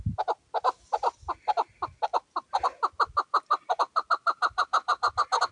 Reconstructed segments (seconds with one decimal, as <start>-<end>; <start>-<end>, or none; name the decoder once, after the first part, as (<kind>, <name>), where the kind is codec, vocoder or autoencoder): none